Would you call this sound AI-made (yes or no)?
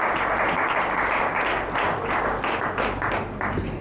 no